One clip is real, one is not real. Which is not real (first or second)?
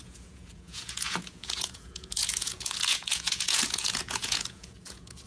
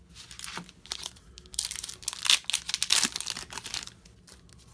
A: first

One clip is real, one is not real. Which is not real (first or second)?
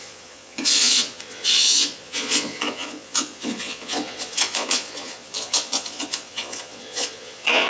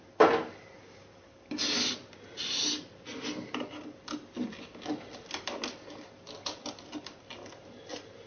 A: first